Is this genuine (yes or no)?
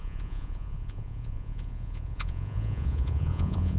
no